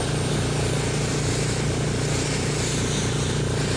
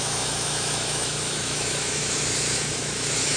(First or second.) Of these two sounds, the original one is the first